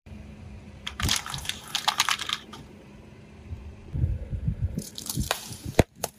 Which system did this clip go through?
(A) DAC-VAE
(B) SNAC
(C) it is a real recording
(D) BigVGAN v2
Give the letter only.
D